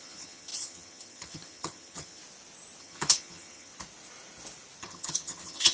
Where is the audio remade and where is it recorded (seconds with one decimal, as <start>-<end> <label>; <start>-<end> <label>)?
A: 0.0-2.2 remade; 2.2-2.8 recorded; 2.8-3.7 remade; 3.7-4.8 recorded; 4.8-5.7 remade